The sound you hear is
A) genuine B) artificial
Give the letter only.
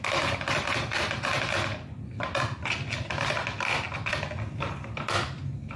A